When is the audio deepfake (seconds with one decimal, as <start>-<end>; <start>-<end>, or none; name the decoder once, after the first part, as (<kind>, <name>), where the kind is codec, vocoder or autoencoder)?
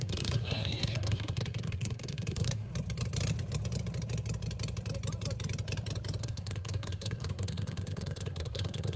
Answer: 0.0-2.7 (codec, SNAC); 6.2-9.0